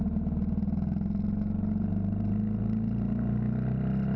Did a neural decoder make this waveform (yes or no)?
no